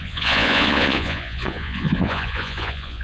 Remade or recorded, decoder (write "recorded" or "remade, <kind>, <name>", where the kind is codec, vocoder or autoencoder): remade, vocoder, Vocos